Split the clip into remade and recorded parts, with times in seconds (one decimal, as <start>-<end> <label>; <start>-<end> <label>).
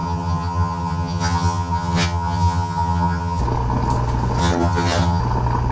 0.0-3.4 remade; 3.4-4.4 recorded; 4.4-5.2 remade; 5.2-5.7 recorded